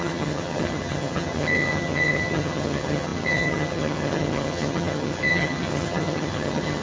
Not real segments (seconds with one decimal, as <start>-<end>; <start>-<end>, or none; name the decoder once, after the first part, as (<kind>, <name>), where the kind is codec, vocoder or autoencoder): 0.0-6.8 (vocoder, HiFi-GAN)

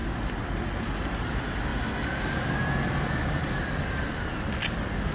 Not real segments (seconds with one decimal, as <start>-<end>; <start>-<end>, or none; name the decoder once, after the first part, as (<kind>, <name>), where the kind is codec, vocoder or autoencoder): none